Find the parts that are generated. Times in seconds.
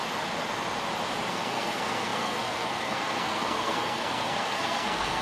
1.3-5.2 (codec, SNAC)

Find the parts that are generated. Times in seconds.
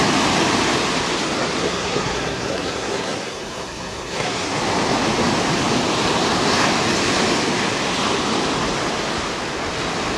1.6-4.6 (codec, SNAC)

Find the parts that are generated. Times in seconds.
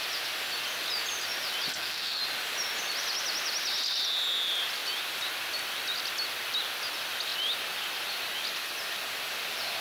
1.7-2.2 (codec, SNAC)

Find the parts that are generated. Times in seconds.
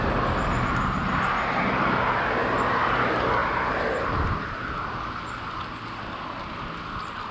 none